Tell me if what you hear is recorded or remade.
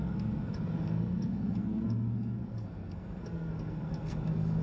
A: remade